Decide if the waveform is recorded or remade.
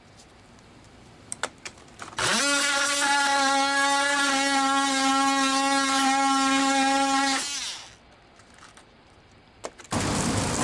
recorded